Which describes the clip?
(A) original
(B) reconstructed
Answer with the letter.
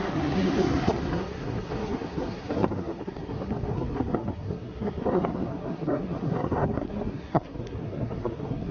B